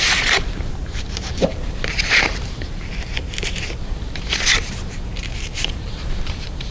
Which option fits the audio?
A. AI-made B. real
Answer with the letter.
A